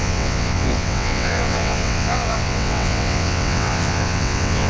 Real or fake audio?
fake